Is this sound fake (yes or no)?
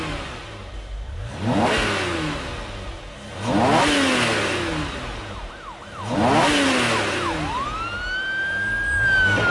no